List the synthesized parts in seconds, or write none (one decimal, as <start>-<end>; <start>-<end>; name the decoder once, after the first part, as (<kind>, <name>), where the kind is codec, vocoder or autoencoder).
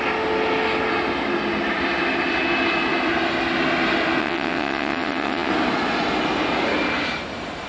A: 4.2-5.5 (vocoder, WaveNeXt)